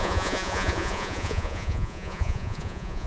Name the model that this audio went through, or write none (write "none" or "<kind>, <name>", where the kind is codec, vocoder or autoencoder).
vocoder, Vocos